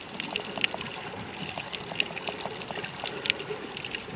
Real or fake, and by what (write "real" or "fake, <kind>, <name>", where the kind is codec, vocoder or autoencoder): real